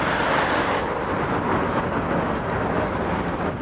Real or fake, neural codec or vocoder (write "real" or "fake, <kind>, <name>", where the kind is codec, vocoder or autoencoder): real